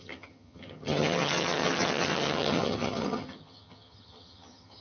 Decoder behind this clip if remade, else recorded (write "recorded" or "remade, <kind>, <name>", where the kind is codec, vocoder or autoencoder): remade, vocoder, HiFi-GAN